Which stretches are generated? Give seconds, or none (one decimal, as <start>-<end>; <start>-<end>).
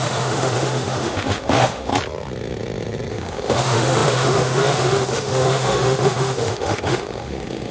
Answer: 0.0-1.9; 3.1-7.7